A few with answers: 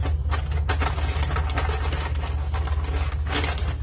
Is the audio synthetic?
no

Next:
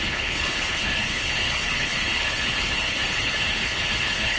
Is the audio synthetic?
yes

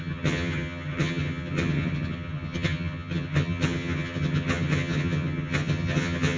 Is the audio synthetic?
yes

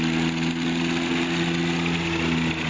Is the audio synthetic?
no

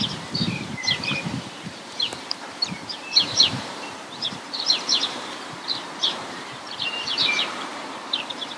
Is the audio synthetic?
yes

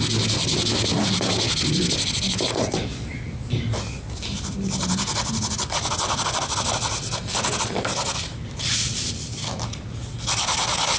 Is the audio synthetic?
no